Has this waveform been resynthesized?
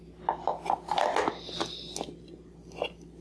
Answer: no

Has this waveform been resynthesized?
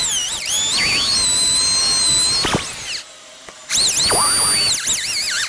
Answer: no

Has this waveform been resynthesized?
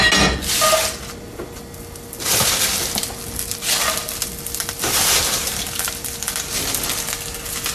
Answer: no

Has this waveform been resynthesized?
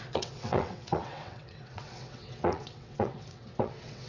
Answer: yes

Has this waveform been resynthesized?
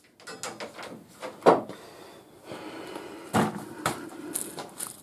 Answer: no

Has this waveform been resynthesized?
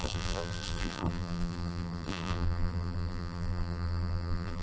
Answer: yes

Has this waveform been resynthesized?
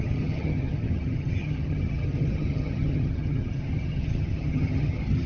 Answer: yes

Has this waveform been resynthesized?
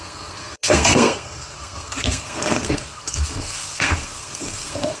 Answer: yes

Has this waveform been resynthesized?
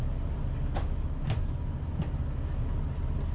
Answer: no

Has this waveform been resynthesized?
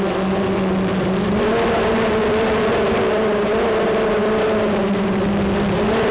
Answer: no